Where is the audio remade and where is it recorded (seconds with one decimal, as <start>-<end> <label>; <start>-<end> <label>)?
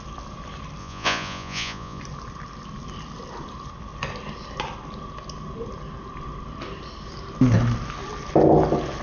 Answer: 0.0-0.8 recorded; 0.8-2.0 remade; 2.0-9.0 recorded